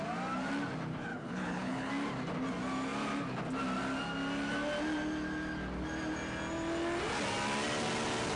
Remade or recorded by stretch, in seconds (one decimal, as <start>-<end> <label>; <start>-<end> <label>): 0.0-1.1 recorded; 1.1-1.9 remade; 1.9-8.4 recorded